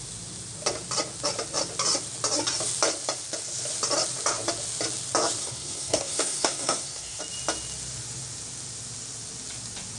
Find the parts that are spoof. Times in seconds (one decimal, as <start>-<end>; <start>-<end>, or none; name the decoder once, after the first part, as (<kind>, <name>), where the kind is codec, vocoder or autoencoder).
5.4-7.2 (codec, SNAC)